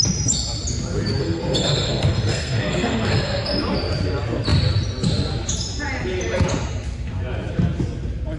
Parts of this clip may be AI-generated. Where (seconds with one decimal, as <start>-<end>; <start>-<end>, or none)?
1.2-3.6